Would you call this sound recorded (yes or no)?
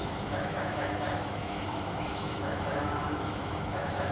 no